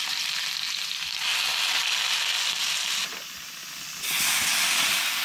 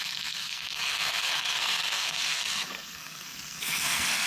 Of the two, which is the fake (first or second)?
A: second